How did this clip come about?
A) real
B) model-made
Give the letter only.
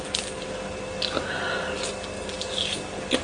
A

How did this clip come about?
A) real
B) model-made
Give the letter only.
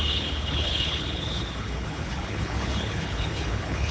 B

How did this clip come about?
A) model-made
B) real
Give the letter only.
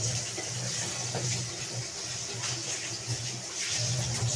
B